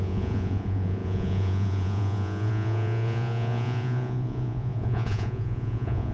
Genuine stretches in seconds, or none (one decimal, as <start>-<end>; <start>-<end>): none